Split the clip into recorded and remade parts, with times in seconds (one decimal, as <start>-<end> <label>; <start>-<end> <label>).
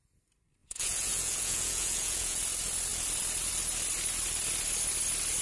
0.0-0.6 recorded; 0.6-2.4 remade; 2.4-5.4 recorded